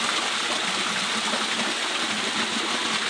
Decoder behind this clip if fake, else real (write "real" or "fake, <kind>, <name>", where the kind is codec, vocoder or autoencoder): real